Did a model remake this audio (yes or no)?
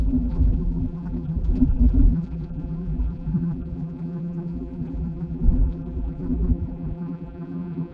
yes